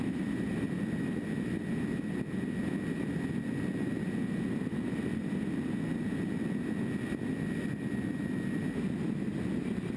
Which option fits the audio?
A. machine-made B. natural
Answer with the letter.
B